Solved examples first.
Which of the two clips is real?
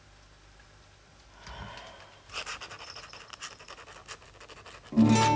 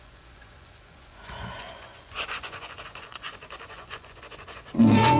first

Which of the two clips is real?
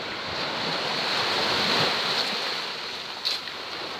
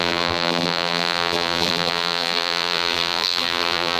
first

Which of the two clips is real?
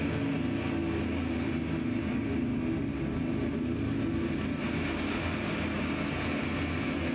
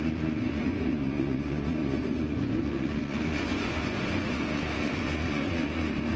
first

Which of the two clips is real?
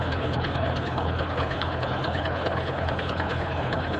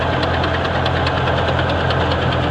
second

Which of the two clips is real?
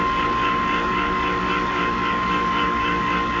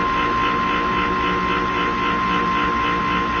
second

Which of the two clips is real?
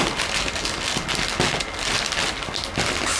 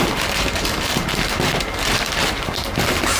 first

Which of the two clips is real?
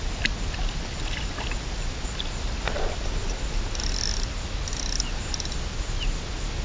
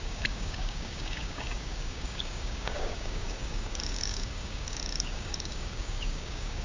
first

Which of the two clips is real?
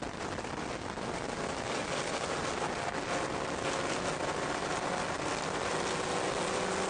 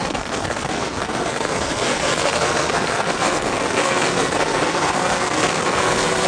first